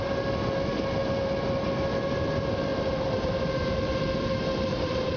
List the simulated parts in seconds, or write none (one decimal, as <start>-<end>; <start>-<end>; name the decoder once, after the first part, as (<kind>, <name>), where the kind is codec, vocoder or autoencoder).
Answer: 2.7-5.2 (vocoder, BigVGAN v2)